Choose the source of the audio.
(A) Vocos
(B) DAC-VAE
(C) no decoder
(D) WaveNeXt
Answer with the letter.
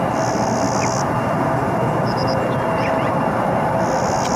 C